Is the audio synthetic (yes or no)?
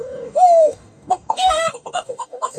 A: yes